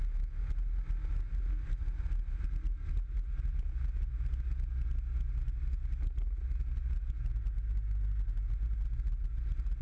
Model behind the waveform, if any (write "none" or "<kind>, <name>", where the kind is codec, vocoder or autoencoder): none